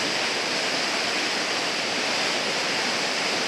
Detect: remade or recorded recorded